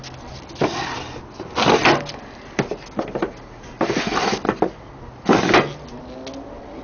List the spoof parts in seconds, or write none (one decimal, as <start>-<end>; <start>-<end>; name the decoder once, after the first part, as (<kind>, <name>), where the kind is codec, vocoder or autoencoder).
none